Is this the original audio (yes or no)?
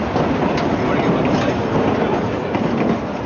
yes